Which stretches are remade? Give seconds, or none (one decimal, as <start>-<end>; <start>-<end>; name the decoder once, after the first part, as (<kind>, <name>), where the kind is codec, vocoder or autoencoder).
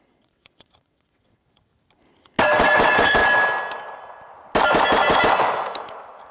0.0-1.7 (vocoder, WaveNeXt); 2.4-3.2